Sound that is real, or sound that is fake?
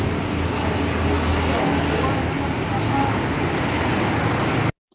real